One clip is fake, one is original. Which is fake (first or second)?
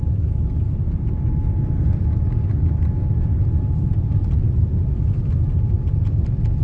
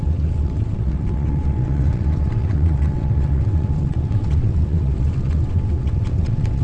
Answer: second